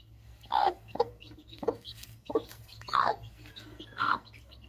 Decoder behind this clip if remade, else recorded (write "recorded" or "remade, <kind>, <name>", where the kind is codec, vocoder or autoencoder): remade, codec, SNAC